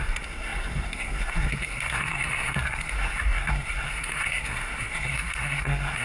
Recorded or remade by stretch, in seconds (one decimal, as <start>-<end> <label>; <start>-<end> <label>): 0.0-6.0 remade